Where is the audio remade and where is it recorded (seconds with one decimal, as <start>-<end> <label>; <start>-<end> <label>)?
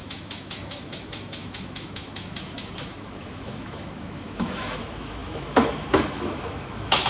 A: 0.0-7.1 remade